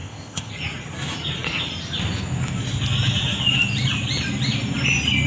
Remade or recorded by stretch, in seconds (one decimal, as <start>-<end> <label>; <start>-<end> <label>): 0.0-0.5 remade; 0.5-5.3 recorded